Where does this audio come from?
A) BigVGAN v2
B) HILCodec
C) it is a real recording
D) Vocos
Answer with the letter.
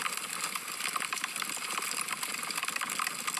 C